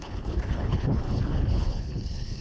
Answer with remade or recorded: remade